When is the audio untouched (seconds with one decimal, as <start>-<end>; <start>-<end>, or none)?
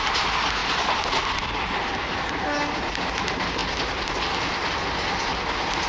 0.0-5.9